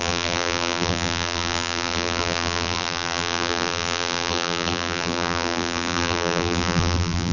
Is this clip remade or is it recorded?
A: remade